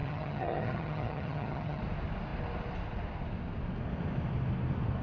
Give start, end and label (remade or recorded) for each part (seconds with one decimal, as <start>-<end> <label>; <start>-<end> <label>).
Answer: 0.0-1.8 remade; 1.8-5.0 recorded

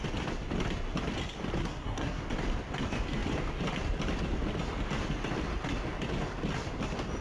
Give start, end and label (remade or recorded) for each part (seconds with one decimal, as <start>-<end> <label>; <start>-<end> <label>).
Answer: 0.0-1.6 recorded; 1.6-2.2 remade; 2.2-7.2 recorded

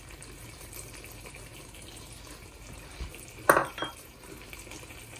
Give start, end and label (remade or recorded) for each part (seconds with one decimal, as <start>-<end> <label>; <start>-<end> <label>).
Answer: 0.0-3.6 recorded; 3.6-4.4 remade; 4.4-5.2 recorded

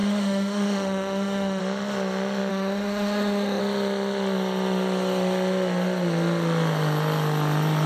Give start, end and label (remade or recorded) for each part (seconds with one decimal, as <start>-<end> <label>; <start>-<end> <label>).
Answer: 0.0-1.6 remade; 1.6-2.5 recorded; 2.5-3.6 remade; 3.6-7.9 recorded

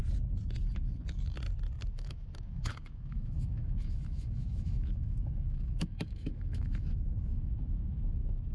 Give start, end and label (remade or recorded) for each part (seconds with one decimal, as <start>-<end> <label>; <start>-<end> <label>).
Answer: 0.0-1.9 recorded; 1.9-8.5 remade